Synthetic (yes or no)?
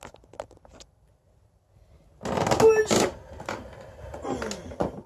no